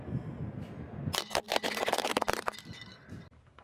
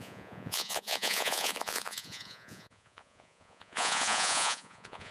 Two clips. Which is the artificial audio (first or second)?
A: second